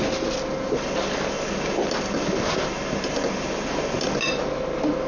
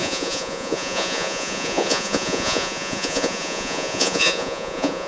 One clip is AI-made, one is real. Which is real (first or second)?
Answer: first